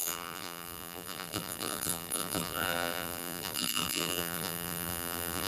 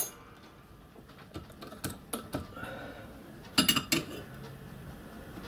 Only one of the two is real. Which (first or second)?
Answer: second